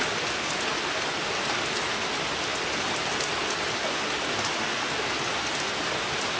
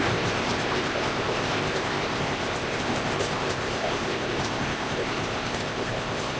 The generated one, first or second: second